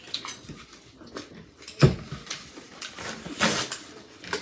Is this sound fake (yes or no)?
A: no